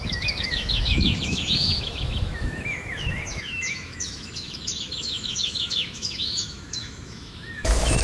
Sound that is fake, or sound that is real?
fake